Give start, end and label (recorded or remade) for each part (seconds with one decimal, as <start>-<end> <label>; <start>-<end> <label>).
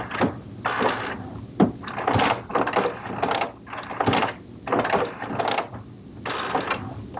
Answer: 0.0-7.2 recorded